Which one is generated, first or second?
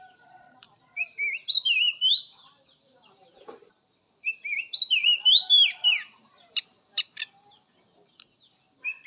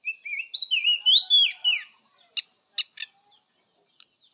first